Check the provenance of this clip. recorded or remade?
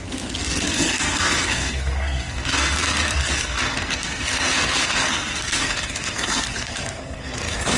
remade